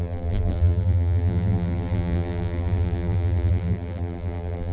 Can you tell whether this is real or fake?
fake